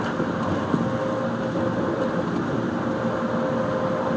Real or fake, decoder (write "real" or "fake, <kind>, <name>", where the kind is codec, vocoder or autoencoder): real